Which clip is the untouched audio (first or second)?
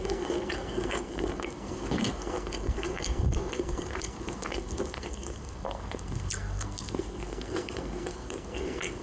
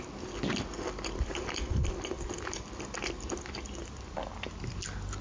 second